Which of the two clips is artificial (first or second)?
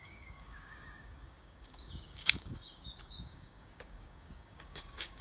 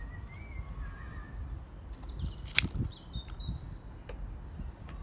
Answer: first